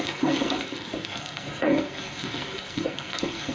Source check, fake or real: fake